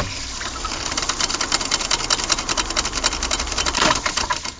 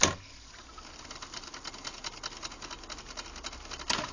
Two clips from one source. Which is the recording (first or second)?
second